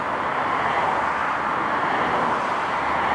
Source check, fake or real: real